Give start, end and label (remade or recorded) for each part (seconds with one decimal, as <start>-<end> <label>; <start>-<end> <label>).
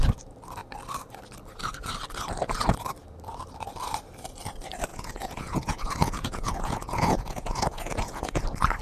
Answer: 0.0-4.9 recorded; 4.9-8.4 remade; 8.4-8.8 recorded